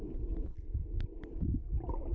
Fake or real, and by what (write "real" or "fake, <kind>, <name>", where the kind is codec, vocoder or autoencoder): real